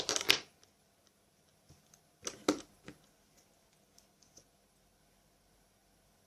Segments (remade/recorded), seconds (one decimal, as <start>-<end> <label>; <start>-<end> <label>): 0.0-6.3 recorded